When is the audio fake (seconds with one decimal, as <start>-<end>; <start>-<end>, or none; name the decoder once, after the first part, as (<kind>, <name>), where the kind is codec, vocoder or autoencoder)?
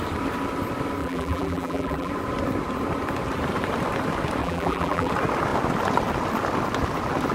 1.0-2.1 (vocoder, BigVGAN v2); 4.4-5.1